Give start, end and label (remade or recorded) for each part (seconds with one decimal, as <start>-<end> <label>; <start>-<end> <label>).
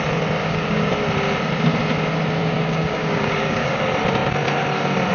0.0-0.4 recorded; 0.4-0.9 remade; 0.9-2.4 recorded; 2.4-3.8 remade; 3.8-5.1 recorded